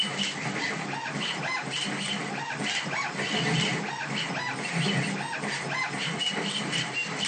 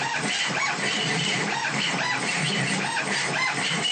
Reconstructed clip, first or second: second